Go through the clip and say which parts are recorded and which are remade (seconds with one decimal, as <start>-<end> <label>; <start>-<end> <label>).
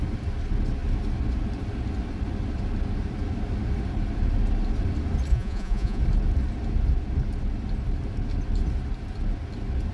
0.0-5.3 recorded; 5.3-6.0 remade; 6.0-9.9 recorded